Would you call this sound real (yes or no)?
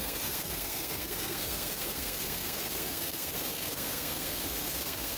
no